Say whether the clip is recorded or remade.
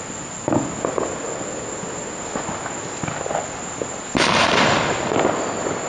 recorded